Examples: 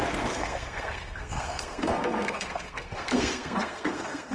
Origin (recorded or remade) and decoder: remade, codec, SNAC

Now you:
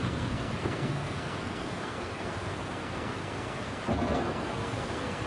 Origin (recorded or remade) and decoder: remade, codec, SNAC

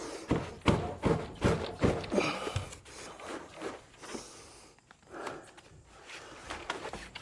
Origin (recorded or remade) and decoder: recorded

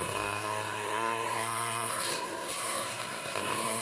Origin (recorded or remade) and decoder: remade, codec, SNAC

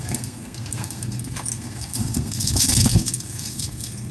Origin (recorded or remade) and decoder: remade, codec, SNAC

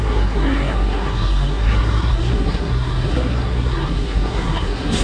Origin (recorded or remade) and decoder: remade, codec, SNAC